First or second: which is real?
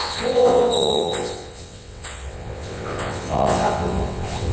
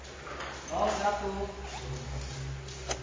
second